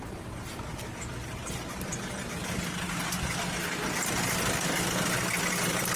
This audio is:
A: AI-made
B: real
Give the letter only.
B